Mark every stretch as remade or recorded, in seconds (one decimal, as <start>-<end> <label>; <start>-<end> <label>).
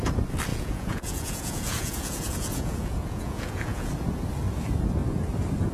0.0-0.5 recorded; 0.5-3.9 remade; 3.9-5.7 recorded